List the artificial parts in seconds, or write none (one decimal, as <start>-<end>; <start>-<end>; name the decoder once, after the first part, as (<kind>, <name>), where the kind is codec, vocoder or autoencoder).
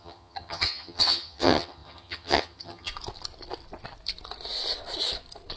0.0-2.9 (vocoder, HiFi-GAN)